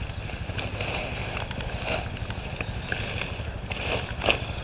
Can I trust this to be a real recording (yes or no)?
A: yes